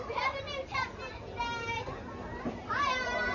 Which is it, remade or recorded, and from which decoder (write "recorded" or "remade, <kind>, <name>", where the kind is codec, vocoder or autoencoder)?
remade, vocoder, BigVGAN v2